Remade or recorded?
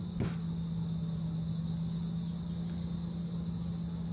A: recorded